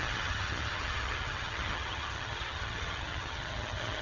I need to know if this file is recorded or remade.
remade